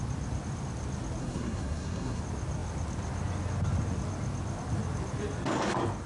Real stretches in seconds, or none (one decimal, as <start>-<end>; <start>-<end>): 0.0-1.2; 2.2-6.1